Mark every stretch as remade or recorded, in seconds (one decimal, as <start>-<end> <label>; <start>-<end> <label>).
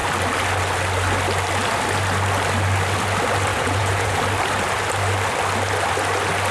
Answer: 0.0-3.5 recorded; 3.5-4.2 remade; 4.2-6.5 recorded